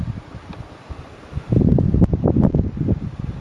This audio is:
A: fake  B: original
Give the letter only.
B